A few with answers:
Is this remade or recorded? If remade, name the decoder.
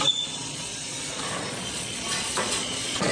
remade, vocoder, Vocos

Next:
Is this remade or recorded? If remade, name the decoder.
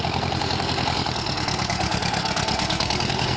remade, codec, SNAC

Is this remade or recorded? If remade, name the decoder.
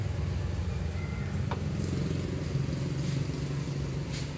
recorded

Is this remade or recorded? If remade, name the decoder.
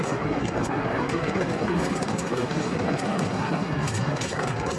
remade, codec, SNAC